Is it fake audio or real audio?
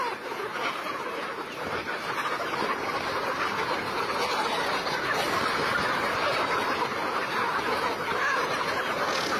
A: real